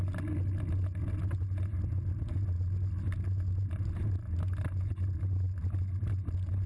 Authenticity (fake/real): real